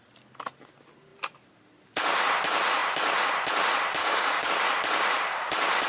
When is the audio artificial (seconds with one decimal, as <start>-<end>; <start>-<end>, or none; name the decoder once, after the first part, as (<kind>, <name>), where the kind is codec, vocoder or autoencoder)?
4.0-4.5 (codec, DAC)